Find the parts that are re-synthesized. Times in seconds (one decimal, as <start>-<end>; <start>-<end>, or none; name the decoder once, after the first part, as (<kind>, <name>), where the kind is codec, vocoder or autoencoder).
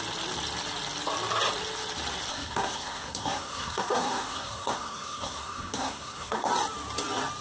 2.3-6.5 (codec, SNAC)